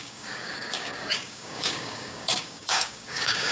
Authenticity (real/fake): fake